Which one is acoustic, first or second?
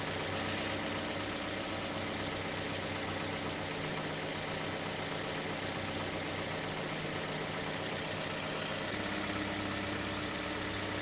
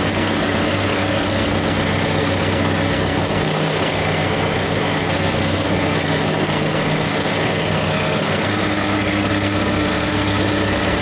first